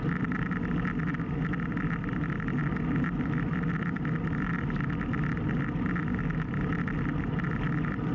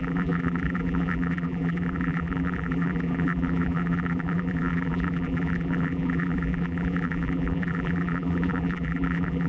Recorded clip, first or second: first